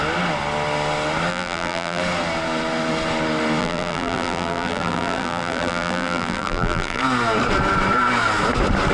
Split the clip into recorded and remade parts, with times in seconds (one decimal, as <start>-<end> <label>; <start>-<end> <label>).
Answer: 0.0-1.3 recorded; 1.3-2.0 remade; 2.0-3.6 recorded; 3.6-7.0 remade; 7.0-8.9 recorded